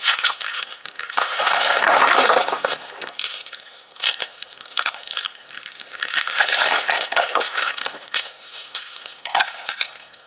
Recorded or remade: remade